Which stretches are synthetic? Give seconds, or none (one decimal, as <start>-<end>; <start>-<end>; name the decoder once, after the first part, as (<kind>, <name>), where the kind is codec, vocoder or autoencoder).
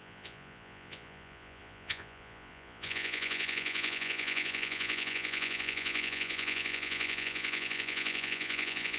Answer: 0.0-9.0 (vocoder, Vocos)